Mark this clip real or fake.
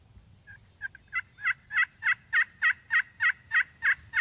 real